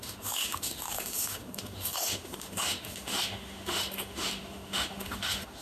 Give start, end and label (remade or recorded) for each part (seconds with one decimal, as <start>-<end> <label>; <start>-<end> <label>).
0.0-5.6 remade